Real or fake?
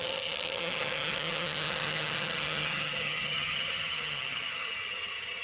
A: fake